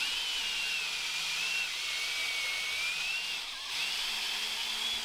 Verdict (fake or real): real